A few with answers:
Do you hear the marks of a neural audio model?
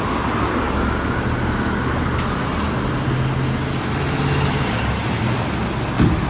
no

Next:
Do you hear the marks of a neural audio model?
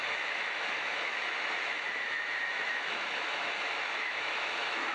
yes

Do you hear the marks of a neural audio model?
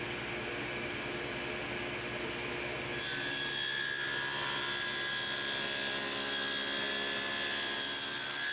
no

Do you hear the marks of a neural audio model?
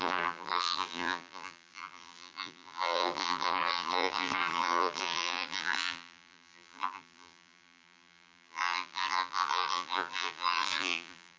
yes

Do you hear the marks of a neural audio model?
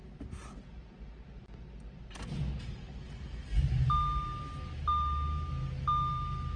no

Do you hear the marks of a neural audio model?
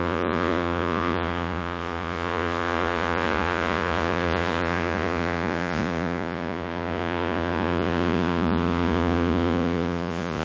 yes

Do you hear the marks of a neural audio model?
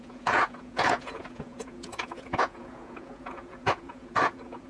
yes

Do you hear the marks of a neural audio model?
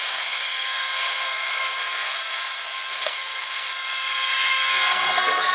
yes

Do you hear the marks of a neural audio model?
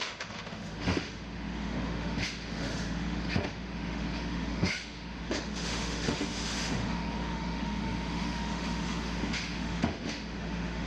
yes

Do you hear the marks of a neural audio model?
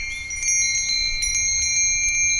no